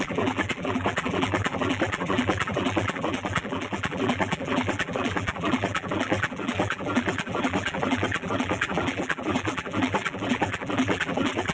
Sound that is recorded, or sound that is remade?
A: remade